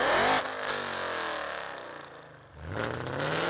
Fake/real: real